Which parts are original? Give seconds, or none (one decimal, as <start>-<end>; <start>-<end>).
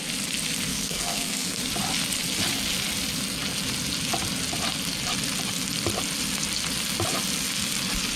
0.0-0.7; 1.6-8.2